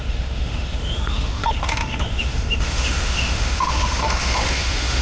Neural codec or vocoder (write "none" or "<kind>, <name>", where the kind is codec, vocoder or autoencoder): autoencoder, DAC-VAE